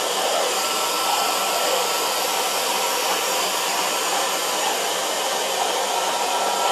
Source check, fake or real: fake